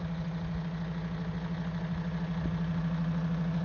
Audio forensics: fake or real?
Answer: real